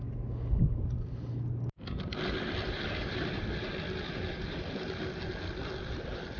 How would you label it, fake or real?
real